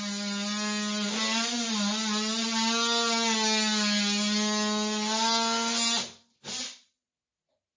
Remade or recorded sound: recorded